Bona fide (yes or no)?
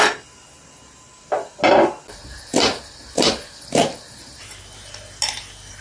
yes